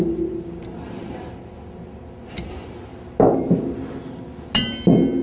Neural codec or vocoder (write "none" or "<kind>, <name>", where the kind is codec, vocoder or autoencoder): none